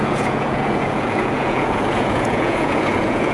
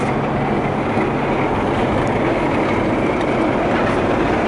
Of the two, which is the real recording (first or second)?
second